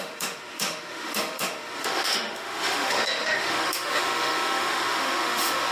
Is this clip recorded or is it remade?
remade